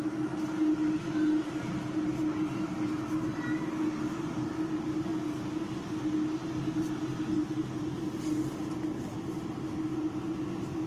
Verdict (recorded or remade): recorded